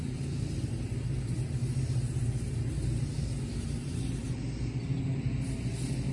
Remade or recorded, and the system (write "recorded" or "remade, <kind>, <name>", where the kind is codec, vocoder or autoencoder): recorded